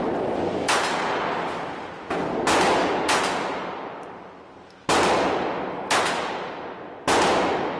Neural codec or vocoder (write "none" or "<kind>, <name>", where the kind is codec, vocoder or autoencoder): none